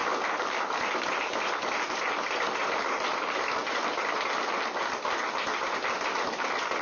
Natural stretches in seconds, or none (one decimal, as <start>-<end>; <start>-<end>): 0.0-6.8